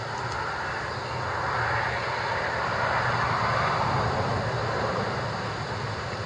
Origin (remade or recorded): recorded